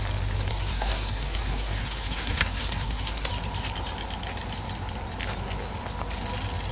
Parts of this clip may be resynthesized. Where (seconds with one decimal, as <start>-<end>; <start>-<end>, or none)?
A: 0.5-3.3